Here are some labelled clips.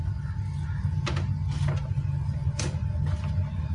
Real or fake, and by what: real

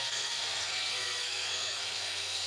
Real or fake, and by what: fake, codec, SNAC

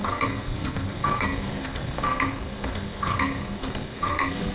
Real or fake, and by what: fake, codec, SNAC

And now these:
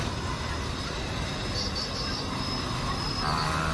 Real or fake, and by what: real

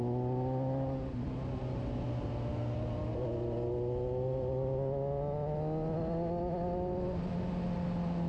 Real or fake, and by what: real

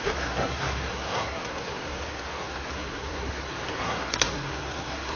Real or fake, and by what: fake, codec, SNAC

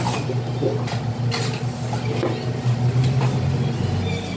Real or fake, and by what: real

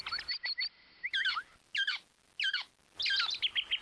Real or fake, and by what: real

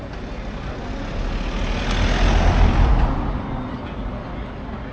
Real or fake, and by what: real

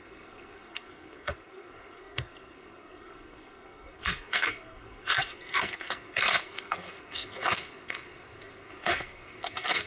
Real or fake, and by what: fake, codec, SNAC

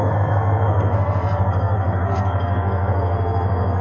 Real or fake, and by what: fake, codec, SNAC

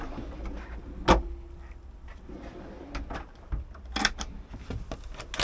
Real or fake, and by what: real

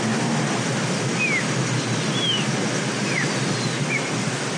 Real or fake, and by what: real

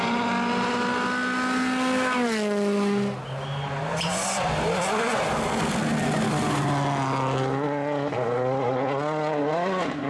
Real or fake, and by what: real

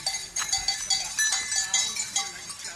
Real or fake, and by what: real